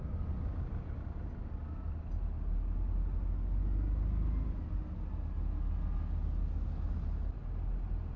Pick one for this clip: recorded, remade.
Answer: recorded